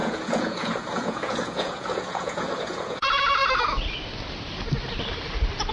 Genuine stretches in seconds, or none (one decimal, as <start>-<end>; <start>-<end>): 3.4-5.7